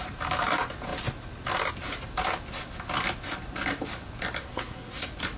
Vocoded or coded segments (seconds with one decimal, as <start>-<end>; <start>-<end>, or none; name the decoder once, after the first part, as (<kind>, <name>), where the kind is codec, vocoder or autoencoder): 4.4-5.0 (codec, SNAC)